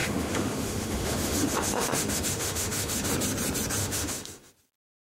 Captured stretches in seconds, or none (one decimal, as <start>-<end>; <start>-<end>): 3.1-3.8; 4.5-5.2